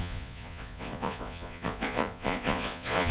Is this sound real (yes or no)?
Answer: no